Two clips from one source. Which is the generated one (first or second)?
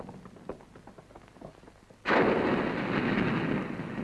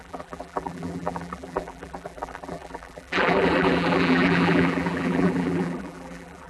second